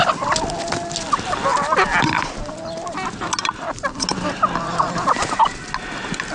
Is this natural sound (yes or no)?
yes